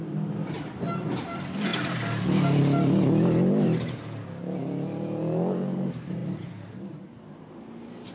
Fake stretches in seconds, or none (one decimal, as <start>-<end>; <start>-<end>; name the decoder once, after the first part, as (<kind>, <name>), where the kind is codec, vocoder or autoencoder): none